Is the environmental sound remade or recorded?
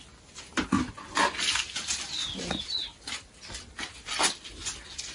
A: recorded